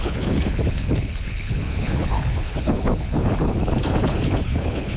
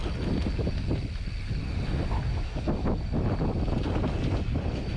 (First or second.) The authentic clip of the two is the second